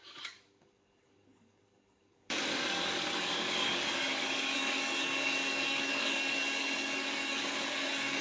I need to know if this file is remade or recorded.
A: remade